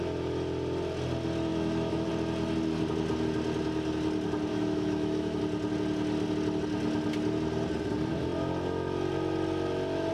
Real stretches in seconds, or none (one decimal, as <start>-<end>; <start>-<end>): 0.0-1.5; 2.1-4.5; 5.4-10.1